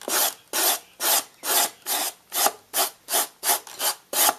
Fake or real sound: real